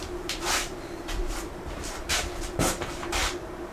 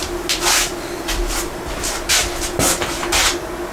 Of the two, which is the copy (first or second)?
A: first